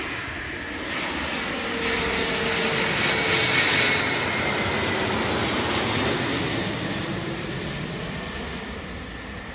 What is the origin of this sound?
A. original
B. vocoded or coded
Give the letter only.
A